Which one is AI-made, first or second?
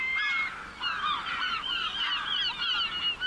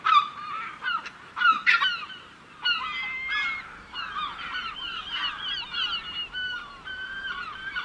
second